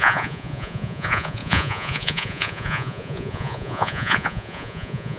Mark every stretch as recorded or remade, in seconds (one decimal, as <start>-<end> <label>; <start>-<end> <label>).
0.0-5.2 remade